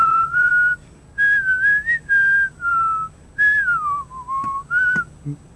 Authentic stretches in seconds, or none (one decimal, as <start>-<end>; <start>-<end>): 0.5-5.6

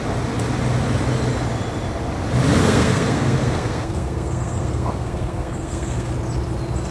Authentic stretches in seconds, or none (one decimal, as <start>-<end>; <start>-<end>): 0.0-2.6; 6.1-6.9

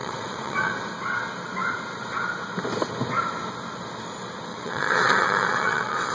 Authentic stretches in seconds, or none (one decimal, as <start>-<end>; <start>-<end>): 0.7-4.5

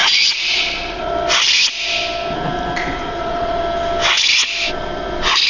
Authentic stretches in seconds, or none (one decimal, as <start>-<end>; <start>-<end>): 1.1-3.0; 3.6-5.5

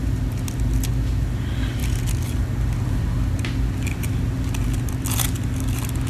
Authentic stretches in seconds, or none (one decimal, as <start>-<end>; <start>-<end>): 0.0-6.1